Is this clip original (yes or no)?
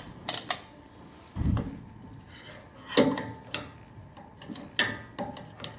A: yes